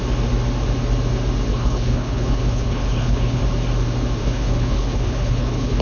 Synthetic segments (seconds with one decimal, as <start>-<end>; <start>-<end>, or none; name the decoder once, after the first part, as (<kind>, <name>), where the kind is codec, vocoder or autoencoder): 1.5-3.4 (codec, HILCodec); 4.2-5.8